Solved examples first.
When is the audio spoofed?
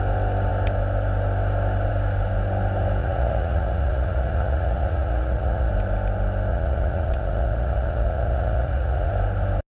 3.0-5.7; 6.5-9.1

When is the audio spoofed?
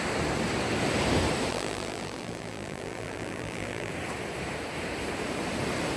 1.5-3.9